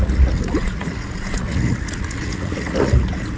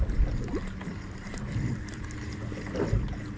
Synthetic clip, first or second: first